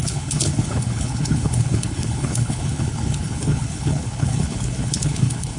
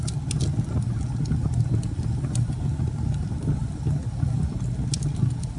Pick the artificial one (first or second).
first